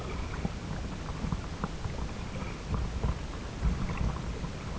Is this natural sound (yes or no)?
yes